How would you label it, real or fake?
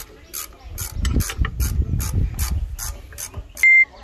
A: real